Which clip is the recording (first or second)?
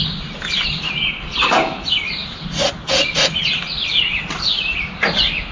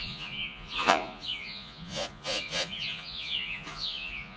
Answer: first